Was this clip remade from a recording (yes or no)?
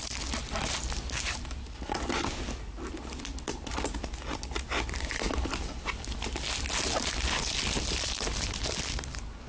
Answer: no